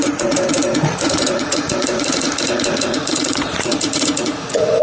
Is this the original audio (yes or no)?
no